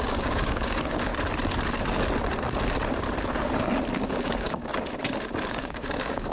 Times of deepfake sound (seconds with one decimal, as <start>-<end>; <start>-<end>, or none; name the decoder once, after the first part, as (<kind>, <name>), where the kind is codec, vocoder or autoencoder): 0.0-1.1 (codec, DAC); 4.1-4.7; 5.5-6.3